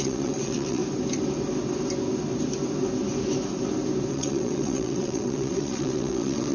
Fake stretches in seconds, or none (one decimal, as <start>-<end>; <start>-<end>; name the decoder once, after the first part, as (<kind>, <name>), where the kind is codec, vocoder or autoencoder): 0.0-0.8 (vocoder, WaveNeXt); 4.1-6.5